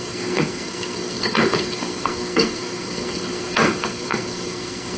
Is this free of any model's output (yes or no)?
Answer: no